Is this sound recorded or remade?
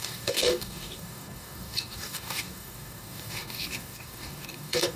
remade